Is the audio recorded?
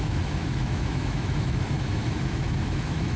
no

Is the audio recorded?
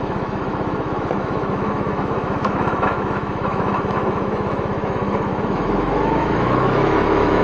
no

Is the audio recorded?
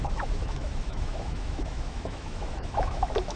no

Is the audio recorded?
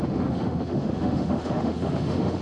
no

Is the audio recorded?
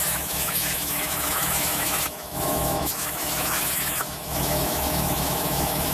no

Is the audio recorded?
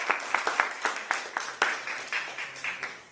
yes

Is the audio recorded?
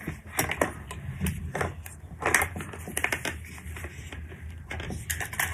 yes